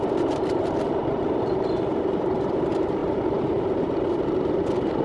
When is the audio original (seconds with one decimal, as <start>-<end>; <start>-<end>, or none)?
0.0-5.0